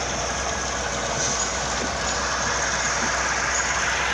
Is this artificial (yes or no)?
no